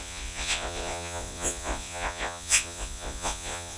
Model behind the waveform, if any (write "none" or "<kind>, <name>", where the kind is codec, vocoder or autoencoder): vocoder, Vocos